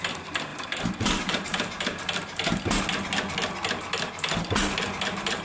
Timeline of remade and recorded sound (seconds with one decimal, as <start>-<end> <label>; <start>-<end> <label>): 0.0-0.5 recorded; 0.5-2.8 remade; 2.8-5.4 recorded